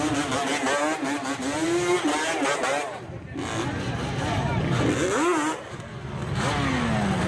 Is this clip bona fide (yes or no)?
yes